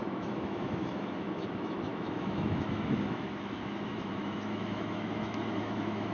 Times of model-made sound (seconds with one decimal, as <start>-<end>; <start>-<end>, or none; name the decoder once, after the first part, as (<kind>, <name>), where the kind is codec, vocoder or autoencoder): 0.0-6.1 (autoencoder, DAC-VAE)